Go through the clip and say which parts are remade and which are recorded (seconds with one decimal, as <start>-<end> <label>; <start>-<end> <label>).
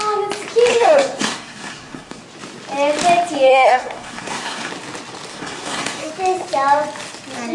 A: 0.0-0.7 recorded; 0.7-2.2 remade; 2.2-3.5 recorded; 3.5-4.7 remade; 4.7-5.3 recorded; 5.3-6.1 remade; 6.1-7.5 recorded